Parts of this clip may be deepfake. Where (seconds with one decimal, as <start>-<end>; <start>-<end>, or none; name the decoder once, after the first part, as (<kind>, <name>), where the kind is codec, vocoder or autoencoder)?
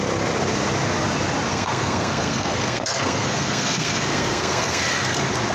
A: 1.5-4.8 (codec, SNAC)